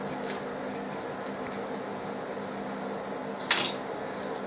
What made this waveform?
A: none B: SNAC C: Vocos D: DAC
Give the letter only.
A